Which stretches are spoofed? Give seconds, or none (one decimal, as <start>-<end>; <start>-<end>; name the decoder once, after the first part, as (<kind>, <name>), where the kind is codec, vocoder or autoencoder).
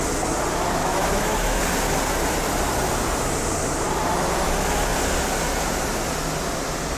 0.8-1.6 (autoencoder, DAC-VAE)